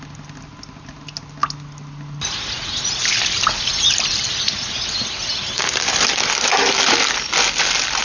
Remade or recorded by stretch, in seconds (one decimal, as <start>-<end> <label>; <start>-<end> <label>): 0.0-8.0 recorded